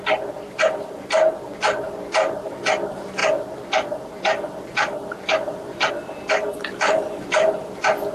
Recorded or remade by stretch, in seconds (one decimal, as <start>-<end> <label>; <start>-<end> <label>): 0.0-8.1 recorded